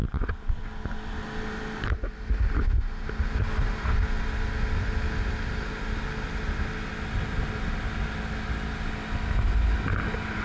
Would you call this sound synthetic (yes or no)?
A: no